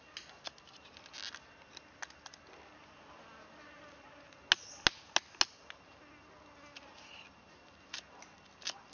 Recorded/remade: recorded